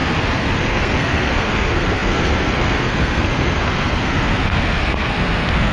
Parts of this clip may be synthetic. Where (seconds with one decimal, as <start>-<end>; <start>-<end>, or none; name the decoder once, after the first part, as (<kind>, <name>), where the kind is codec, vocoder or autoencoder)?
0.0-5.7 (codec, SNAC)